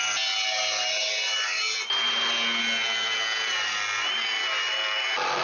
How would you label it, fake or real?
real